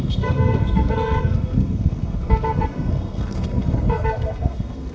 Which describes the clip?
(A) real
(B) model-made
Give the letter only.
B